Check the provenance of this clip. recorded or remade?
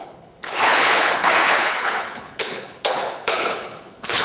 remade